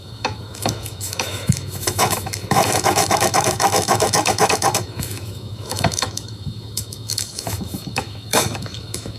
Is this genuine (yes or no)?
no